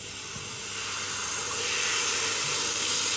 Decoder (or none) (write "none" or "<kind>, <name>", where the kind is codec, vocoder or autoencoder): none